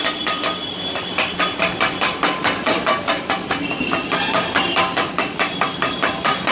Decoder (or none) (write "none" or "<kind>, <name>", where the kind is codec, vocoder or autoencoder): none